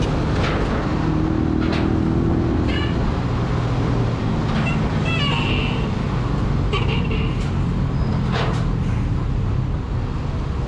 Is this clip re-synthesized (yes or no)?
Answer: no